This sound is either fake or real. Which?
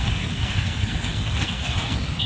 fake